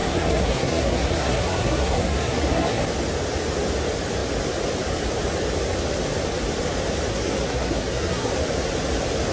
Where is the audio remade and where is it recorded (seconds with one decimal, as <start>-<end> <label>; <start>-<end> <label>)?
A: 0.0-2.8 remade; 2.8-7.1 recorded; 7.1-8.3 remade; 8.3-9.3 recorded